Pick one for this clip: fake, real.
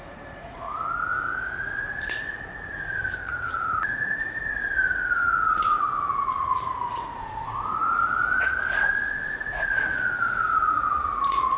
fake